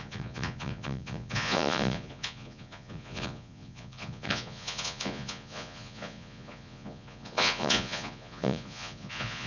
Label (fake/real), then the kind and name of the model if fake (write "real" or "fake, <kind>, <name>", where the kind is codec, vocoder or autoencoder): fake, vocoder, Vocos